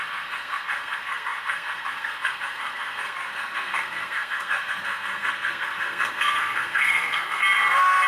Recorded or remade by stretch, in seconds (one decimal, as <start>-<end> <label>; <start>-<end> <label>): 0.0-7.4 remade; 7.4-8.1 recorded